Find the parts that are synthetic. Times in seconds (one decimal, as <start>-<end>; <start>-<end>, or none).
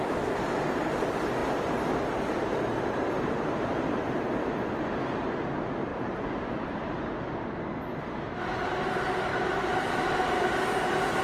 3.7-4.3; 5.9-7.0